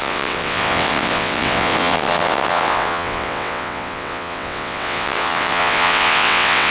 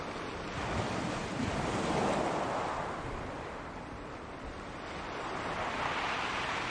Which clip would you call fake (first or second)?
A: first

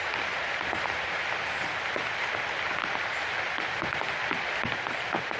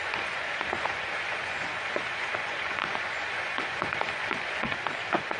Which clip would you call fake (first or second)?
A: second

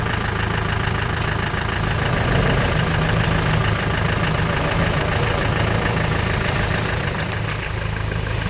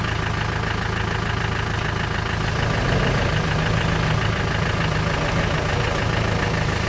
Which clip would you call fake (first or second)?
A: first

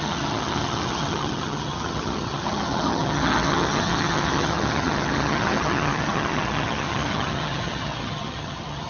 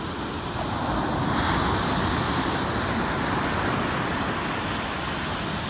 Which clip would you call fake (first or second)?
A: first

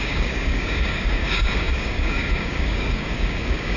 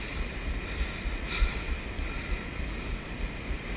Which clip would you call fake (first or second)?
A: first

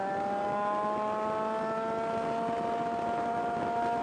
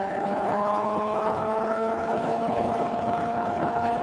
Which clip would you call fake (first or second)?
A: second